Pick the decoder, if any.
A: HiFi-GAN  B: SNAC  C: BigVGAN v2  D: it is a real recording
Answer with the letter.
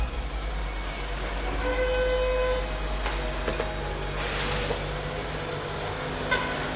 D